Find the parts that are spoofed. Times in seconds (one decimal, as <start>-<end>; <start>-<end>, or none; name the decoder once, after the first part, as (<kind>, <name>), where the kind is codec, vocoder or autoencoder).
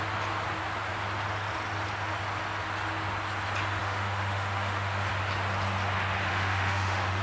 3.8-5.1 (autoencoder, DAC-VAE); 6.3-7.2